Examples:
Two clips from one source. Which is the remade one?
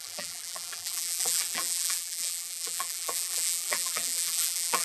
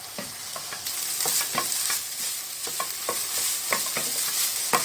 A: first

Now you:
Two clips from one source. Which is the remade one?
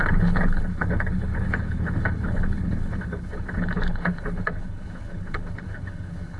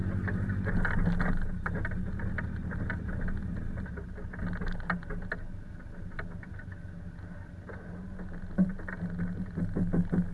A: first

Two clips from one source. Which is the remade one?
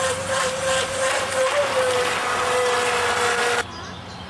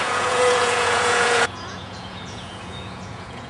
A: second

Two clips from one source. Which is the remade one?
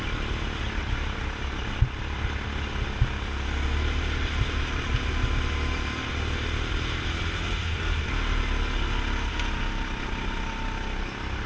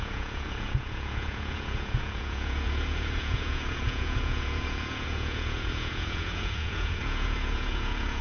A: second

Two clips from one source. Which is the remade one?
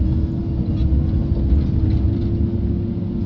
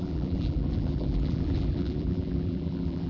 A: second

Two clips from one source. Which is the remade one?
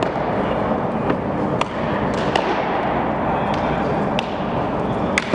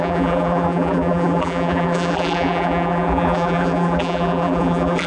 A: second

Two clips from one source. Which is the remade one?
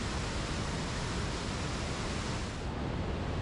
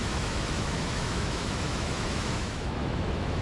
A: second